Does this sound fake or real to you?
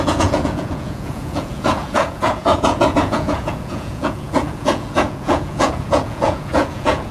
fake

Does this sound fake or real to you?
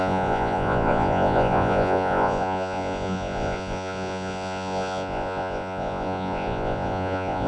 fake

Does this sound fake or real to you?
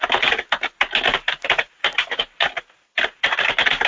real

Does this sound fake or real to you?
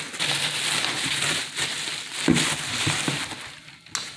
real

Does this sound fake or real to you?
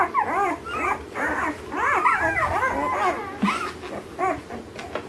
real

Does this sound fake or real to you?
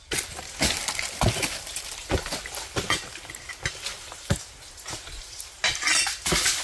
real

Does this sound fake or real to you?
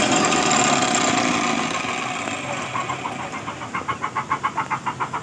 real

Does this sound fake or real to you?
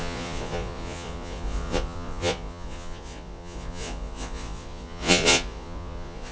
fake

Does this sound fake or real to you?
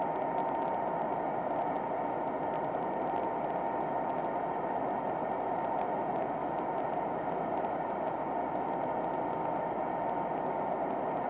real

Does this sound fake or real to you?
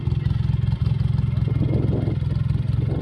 real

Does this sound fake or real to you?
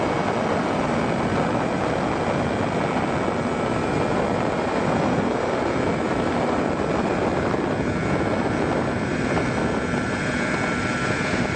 real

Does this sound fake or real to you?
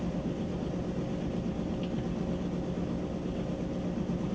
real